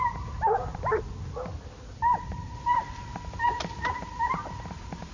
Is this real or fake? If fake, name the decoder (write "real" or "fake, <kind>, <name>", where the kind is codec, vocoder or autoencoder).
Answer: real